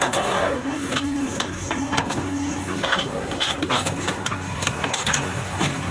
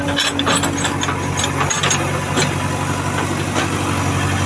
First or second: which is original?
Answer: second